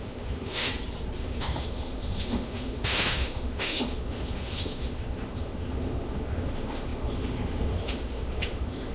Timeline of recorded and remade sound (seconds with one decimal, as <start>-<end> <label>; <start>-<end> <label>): 0.0-0.7 remade; 0.7-1.2 recorded; 1.2-8.9 remade